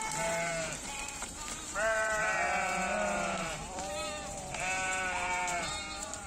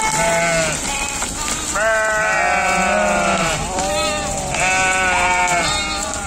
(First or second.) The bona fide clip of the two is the second